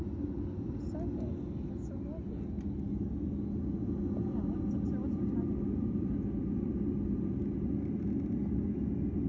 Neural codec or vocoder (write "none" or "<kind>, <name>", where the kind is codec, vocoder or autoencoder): none